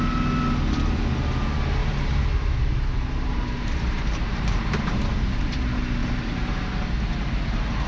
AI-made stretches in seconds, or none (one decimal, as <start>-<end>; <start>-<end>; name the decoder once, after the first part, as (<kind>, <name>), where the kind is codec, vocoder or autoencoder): 1.8-5.6 (vocoder, BigVGAN v2); 6.0-6.7